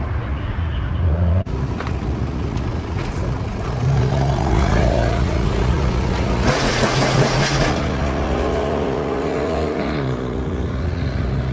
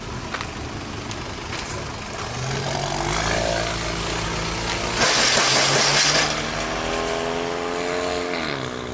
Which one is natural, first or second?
second